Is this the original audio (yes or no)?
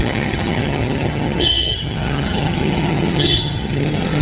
no